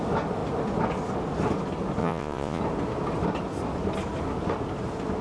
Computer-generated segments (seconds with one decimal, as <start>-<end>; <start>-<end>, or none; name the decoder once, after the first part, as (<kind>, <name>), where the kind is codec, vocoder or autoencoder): 2.0-2.6 (vocoder, Vocos)